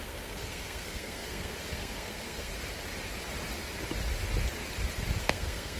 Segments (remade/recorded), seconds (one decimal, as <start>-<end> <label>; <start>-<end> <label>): 0.0-2.5 remade; 2.5-5.2 recorded; 5.2-5.8 remade